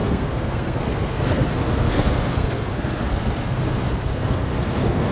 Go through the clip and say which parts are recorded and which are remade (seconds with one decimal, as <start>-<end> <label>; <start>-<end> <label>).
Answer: 0.0-5.1 remade

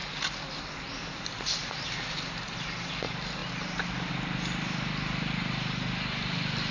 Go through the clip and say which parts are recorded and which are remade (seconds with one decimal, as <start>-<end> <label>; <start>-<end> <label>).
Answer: 0.0-6.7 recorded

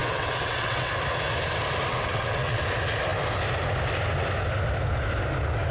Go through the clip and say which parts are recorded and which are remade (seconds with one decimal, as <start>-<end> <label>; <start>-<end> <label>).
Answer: 0.0-0.9 remade; 0.9-1.9 recorded; 1.9-2.6 remade; 2.6-5.7 recorded

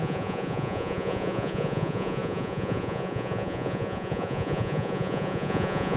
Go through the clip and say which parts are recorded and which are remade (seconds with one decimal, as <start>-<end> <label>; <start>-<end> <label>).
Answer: 0.0-6.0 remade

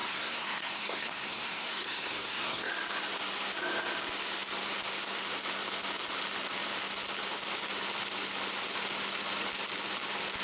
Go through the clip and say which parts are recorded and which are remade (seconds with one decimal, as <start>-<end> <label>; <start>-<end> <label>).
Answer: 0.0-2.7 remade; 2.7-10.4 recorded

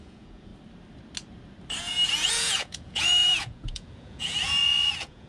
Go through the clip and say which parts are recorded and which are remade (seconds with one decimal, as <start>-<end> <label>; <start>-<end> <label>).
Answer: 0.0-0.5 remade; 0.5-1.8 recorded; 1.8-5.3 remade

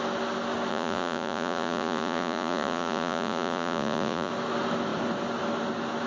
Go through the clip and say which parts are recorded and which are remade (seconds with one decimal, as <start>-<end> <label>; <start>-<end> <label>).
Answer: 0.0-0.7 recorded; 0.7-4.3 remade; 4.3-6.1 recorded

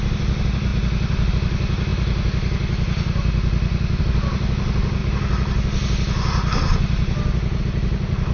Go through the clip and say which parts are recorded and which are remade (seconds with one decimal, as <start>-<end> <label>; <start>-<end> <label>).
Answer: 0.0-8.3 recorded